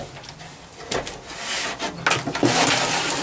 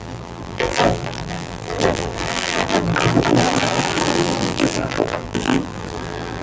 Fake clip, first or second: second